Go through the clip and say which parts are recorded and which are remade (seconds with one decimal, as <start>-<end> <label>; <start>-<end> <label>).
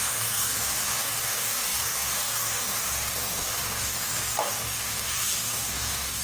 0.0-6.2 remade